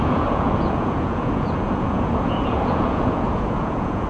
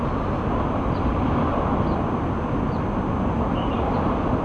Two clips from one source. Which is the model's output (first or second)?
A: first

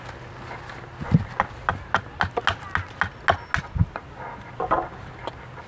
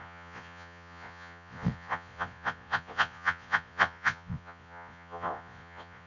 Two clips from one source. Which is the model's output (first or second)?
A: second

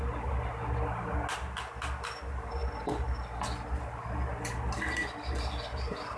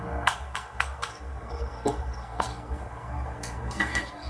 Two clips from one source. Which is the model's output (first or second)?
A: second